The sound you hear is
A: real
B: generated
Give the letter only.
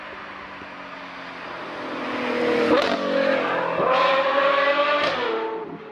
A